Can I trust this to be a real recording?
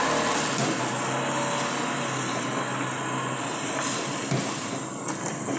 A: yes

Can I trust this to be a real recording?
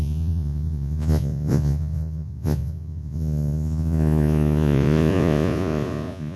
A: no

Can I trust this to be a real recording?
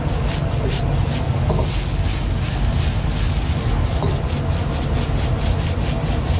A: yes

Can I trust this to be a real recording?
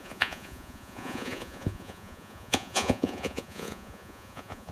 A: no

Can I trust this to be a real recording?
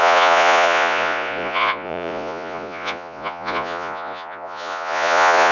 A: no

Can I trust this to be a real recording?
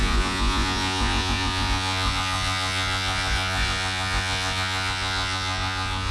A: no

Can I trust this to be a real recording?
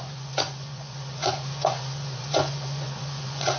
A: no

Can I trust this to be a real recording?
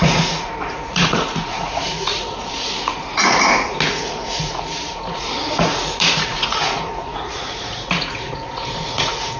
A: no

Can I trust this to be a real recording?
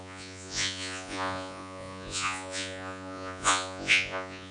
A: no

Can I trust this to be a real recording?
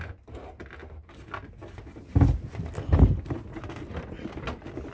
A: yes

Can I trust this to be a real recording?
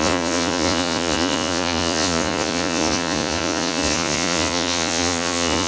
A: no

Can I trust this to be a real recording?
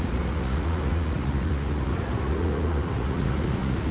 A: no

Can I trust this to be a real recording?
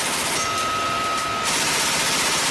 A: yes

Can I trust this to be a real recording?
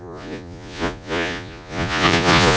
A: no